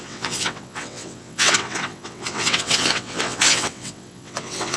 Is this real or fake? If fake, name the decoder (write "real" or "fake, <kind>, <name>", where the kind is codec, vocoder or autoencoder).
fake, vocoder, WaveNeXt